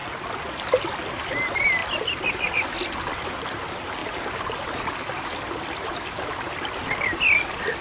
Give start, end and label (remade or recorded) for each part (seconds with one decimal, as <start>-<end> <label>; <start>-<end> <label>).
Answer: 0.0-7.8 recorded